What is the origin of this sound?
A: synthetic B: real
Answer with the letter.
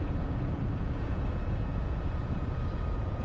A